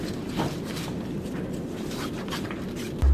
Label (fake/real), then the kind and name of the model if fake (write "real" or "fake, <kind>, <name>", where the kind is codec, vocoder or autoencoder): fake, vocoder, BigVGAN v2